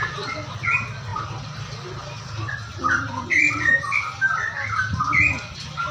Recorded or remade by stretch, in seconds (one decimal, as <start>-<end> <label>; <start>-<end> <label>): 0.0-1.1 recorded; 1.1-1.9 remade; 1.9-2.7 recorded; 2.7-4.8 remade; 4.8-5.9 recorded